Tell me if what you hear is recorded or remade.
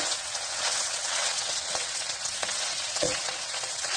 remade